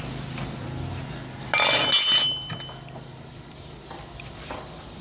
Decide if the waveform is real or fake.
real